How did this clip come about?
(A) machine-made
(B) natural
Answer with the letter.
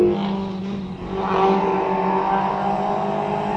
B